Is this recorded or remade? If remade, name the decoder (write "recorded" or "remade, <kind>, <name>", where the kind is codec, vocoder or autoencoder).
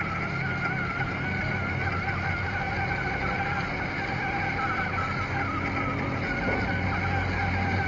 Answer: recorded